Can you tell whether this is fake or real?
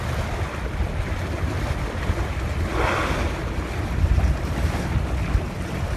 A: real